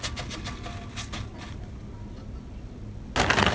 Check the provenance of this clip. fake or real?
real